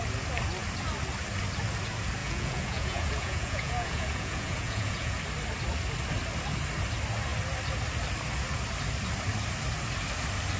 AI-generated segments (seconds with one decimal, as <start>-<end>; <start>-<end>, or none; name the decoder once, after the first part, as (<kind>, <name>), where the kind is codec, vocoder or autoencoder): 2.2-5.2 (vocoder, Vocos)